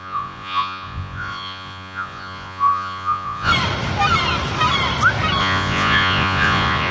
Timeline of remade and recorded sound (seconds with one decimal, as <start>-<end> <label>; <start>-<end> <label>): 0.0-3.5 remade; 3.5-5.4 recorded; 5.4-6.9 remade